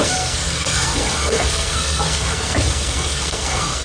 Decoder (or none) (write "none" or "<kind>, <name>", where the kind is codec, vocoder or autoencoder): codec, SNAC